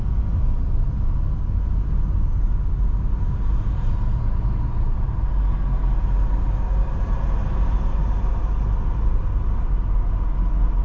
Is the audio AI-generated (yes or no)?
no